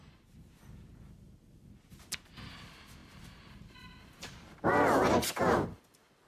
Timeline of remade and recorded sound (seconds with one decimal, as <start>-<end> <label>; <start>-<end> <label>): 0.0-3.0 recorded; 3.0-5.8 remade; 5.8-6.3 recorded